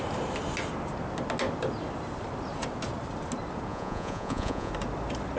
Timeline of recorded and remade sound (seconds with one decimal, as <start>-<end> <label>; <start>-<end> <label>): 0.0-3.7 recorded; 3.7-4.7 remade; 4.7-5.4 recorded